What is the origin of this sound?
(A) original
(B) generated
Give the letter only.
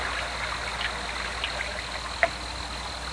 A